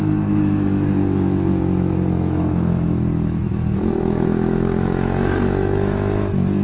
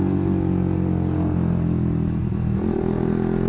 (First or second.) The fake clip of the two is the first